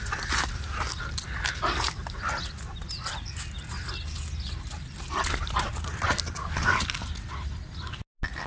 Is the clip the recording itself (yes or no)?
yes